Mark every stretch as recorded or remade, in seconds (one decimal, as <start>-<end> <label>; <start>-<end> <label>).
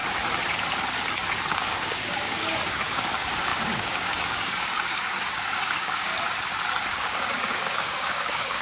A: 0.0-1.5 recorded; 1.5-6.1 remade; 6.1-6.8 recorded; 6.8-8.6 remade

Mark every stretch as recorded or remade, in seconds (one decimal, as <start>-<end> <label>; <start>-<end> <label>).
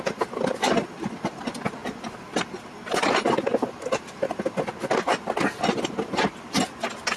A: 0.0-1.8 recorded; 1.8-2.4 remade; 2.4-7.2 recorded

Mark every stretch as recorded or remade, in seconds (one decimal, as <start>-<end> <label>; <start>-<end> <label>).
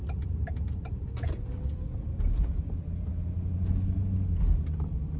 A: 0.0-1.8 recorded; 1.8-2.6 remade; 2.6-5.2 recorded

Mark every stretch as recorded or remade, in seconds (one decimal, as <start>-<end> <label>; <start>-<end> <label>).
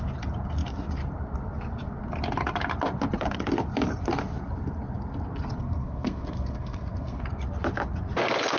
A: 0.0-5.6 recorded; 5.6-7.2 remade; 7.2-8.6 recorded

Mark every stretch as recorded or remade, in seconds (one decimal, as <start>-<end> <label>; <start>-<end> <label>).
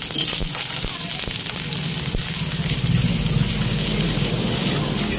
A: 0.0-5.2 recorded